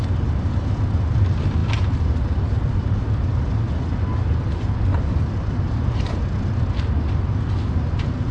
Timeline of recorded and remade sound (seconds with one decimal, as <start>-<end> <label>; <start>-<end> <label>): 0.0-8.3 recorded